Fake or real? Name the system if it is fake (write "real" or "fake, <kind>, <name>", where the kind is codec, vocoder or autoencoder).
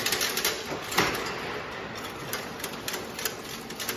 real